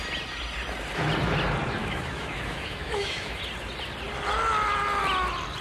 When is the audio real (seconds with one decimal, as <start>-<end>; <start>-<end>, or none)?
0.0-1.8; 3.4-5.6